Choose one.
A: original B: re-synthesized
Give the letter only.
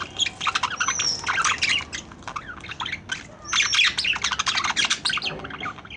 A